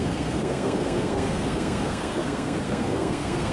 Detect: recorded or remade remade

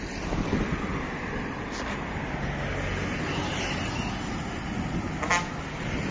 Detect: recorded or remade recorded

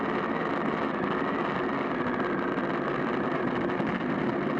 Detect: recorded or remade recorded